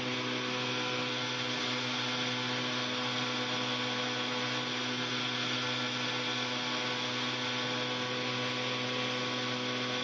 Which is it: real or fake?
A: real